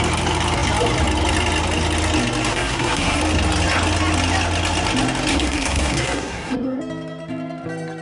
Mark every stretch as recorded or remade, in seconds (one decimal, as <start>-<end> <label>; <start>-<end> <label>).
0.0-2.5 recorded; 2.5-3.2 remade; 3.2-5.3 recorded; 5.3-6.8 remade; 6.8-8.0 recorded